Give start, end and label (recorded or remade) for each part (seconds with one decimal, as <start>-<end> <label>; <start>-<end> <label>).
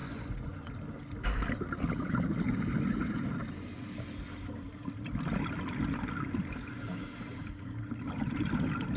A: 0.0-0.7 remade; 0.7-9.0 recorded